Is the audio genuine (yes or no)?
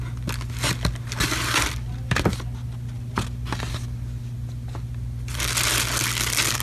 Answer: yes